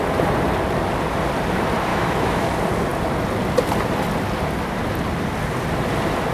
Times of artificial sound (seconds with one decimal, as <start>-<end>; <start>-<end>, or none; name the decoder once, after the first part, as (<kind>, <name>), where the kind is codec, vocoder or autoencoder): 1.9-2.5 (autoencoder, DAC-VAE)